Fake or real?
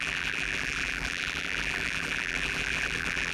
fake